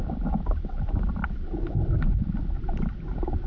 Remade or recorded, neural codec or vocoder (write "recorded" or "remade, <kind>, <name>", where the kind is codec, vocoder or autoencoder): recorded